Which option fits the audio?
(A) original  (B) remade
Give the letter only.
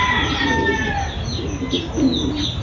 A